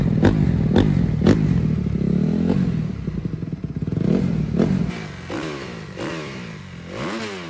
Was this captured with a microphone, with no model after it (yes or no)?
yes